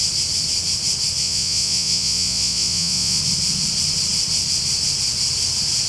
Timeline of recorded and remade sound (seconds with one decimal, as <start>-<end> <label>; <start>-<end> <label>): 0.0-1.2 recorded; 1.2-3.2 remade; 3.2-5.9 recorded